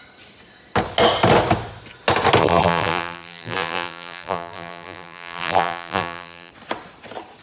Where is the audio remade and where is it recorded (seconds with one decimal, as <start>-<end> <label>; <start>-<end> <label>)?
0.0-2.4 recorded; 2.4-6.5 remade; 6.5-7.4 recorded